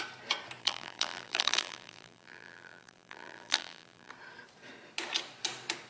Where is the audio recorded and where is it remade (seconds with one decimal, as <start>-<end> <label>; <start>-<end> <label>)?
0.0-0.6 recorded; 0.6-4.1 remade; 4.1-5.9 recorded